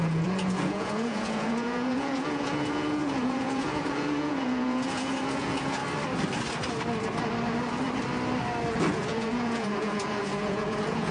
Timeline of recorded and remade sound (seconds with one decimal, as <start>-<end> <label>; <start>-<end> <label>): 0.0-5.8 remade; 5.8-8.9 recorded; 8.9-11.1 remade